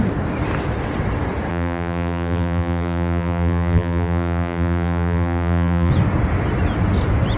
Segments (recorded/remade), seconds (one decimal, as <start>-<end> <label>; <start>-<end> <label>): 0.0-1.5 recorded; 1.5-5.9 remade; 5.9-7.4 recorded